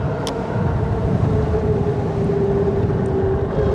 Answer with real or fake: real